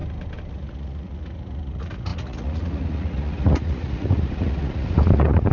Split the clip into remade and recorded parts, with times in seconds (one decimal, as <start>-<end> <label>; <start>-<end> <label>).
0.0-0.5 recorded; 0.5-5.5 remade